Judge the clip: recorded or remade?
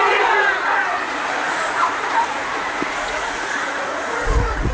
remade